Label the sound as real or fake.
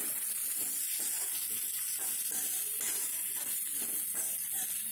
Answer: real